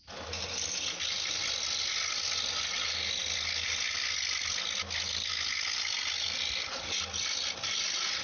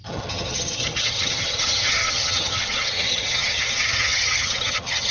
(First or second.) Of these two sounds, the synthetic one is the second